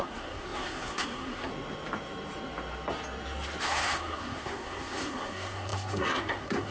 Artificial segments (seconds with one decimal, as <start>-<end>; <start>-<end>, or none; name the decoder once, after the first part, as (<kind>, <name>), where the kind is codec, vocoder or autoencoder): 0.0-1.5 (codec, SNAC); 3.6-6.7